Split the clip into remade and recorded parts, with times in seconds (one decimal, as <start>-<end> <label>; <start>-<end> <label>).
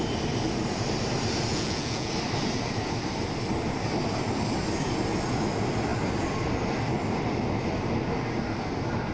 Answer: 0.0-1.5 recorded; 1.5-2.1 remade; 2.1-9.1 recorded